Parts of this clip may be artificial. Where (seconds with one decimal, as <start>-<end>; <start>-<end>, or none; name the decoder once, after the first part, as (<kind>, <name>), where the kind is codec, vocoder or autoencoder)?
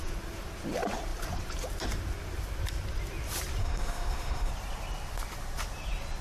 3.6-4.5 (autoencoder, DAC-VAE)